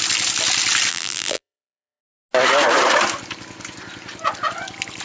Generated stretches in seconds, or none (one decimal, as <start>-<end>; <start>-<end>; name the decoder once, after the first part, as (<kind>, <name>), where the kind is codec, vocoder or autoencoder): 0.9-2.0 (vocoder, BigVGAN v2)